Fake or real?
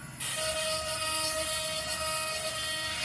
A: real